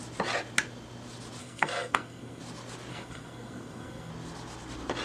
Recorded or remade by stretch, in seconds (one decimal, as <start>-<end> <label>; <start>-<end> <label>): 0.0-1.4 recorded; 1.4-2.4 remade; 2.4-2.9 recorded; 2.9-4.1 remade; 4.1-5.0 recorded